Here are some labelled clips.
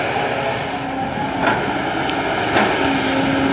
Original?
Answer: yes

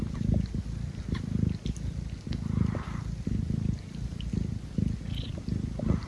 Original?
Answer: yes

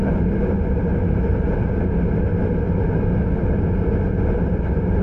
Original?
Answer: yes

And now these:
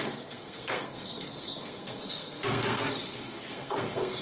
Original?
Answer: no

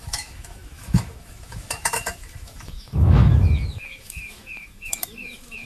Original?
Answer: no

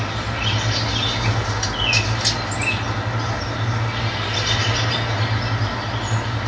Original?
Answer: yes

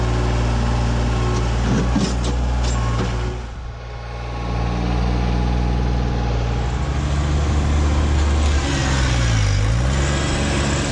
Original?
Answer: yes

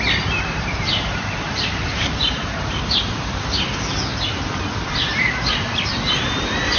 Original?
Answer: no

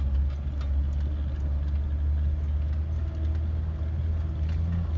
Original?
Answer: yes